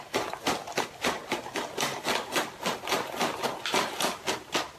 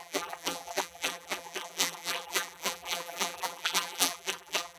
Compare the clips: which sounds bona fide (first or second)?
first